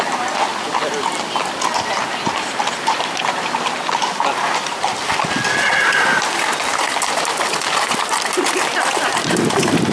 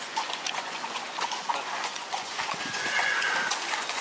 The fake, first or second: second